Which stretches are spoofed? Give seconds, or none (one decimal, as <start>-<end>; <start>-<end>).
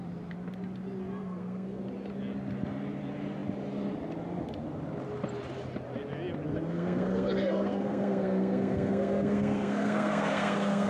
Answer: 1.2-1.8; 6.5-10.9